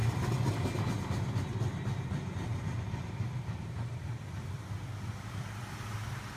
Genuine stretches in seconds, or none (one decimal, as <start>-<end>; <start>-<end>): 0.0-6.4